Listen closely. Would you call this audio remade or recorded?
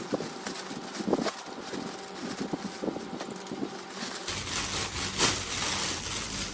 recorded